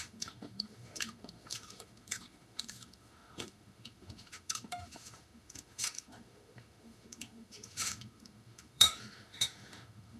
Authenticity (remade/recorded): remade